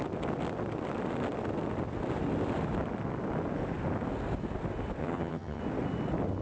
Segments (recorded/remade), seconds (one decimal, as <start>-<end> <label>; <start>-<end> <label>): 0.0-5.0 recorded; 5.0-5.6 remade; 5.6-6.4 recorded